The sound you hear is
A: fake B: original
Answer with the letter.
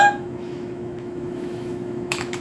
A